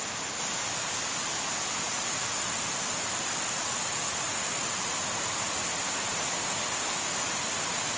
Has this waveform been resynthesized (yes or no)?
no